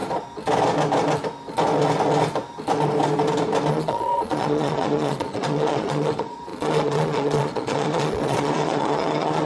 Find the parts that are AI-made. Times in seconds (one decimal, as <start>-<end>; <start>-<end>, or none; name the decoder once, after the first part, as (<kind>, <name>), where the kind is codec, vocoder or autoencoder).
3.7-9.5 (vocoder, Vocos)